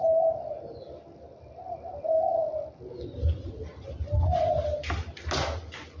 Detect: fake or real real